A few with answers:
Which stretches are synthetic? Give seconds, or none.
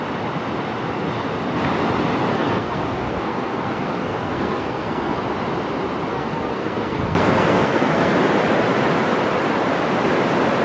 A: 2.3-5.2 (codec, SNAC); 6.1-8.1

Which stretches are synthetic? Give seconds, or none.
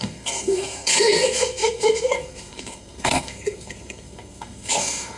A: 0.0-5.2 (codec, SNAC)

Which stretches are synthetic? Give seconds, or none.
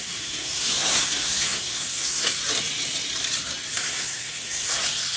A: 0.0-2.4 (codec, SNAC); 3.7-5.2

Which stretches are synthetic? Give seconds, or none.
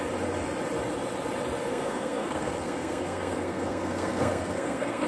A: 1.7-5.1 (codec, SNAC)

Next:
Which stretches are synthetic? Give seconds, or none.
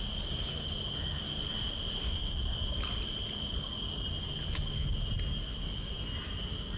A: none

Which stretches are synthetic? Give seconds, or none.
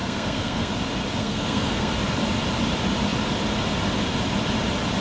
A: 0.0-0.7 (codec, SNAC); 1.2-1.9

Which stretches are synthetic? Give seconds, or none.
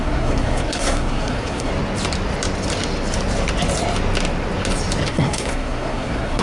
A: 0.0-1.7 (codec, SNAC); 5.1-6.4